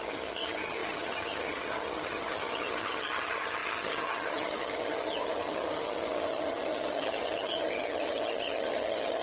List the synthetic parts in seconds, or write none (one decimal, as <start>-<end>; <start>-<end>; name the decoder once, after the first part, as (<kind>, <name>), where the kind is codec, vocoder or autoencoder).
0.0-9.2 (vocoder, HiFi-GAN)